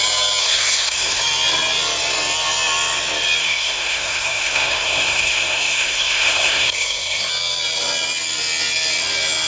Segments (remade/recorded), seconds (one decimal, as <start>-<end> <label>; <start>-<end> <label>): 0.0-0.4 recorded; 0.4-1.2 remade; 1.2-3.4 recorded; 3.4-7.3 remade; 7.3-9.5 recorded